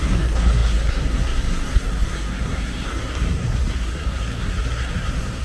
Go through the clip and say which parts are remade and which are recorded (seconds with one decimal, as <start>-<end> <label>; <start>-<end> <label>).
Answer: 0.0-5.4 remade